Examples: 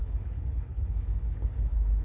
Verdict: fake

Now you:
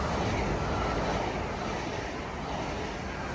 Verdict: real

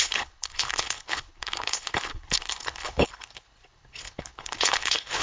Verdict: fake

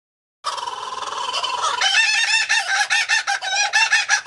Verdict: real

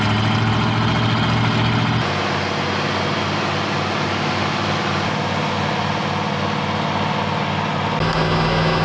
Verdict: real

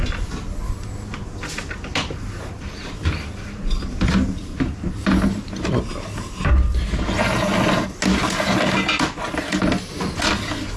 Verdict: real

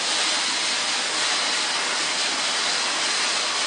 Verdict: real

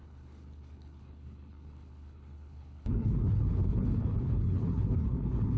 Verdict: fake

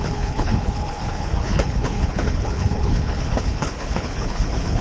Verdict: fake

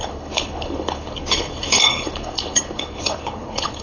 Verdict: fake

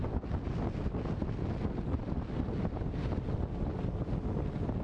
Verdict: real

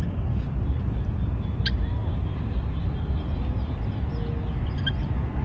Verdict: real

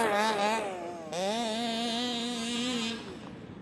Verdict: real